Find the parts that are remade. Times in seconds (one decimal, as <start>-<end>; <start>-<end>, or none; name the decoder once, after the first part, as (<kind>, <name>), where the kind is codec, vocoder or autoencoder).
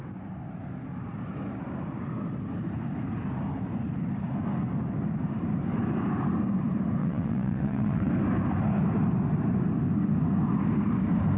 7.0-8.1 (vocoder, WaveNeXt)